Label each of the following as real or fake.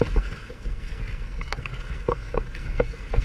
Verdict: fake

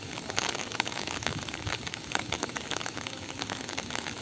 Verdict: fake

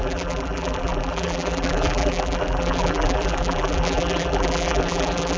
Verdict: fake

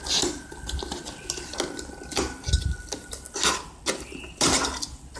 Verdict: real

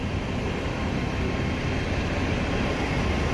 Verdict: fake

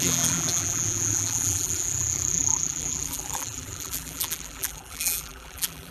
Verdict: fake